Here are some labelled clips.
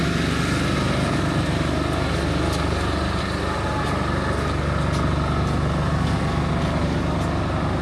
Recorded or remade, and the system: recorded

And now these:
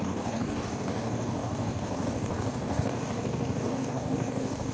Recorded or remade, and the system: remade, codec, DAC